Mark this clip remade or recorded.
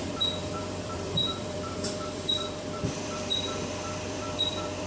remade